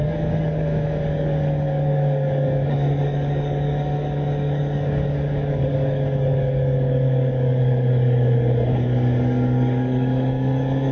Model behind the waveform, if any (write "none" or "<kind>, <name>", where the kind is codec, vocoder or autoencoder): codec, DAC